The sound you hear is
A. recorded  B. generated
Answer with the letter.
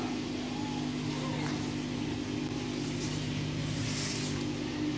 A